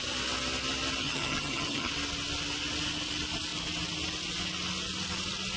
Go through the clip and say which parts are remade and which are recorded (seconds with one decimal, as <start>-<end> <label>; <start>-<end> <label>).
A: 0.0-1.0 recorded; 1.0-1.9 remade; 1.9-5.6 recorded